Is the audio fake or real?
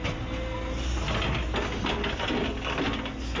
real